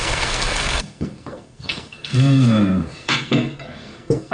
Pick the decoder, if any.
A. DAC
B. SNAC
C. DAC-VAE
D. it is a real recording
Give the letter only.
B